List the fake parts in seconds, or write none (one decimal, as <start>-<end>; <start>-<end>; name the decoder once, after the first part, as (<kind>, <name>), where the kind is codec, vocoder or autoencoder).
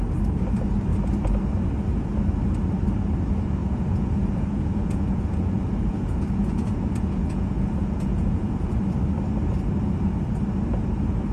3.6-8.7 (vocoder, Vocos)